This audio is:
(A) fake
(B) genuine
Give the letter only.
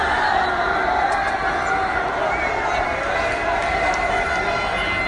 B